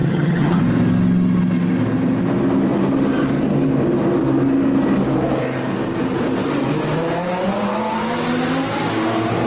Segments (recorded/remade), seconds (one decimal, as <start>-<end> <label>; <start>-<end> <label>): 0.0-0.6 remade; 0.6-9.5 recorded